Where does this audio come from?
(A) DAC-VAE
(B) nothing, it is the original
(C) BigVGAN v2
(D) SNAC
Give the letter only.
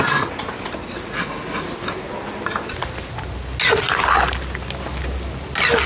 B